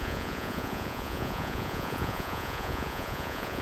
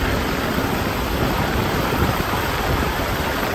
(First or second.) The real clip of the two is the second